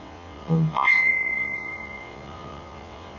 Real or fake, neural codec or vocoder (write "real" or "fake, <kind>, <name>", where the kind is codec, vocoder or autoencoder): fake, vocoder, WaveNeXt